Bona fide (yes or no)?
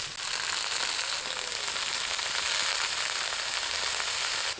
yes